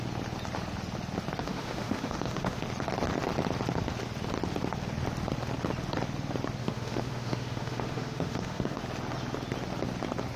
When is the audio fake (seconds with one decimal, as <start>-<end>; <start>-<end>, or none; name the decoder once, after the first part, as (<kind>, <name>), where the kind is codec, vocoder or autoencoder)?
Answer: 1.4-2.6 (autoencoder, DAC-VAE); 6.6-8.8